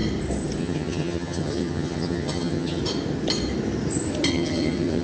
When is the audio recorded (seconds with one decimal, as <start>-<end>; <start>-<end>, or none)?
0.0-0.6; 2.8-4.3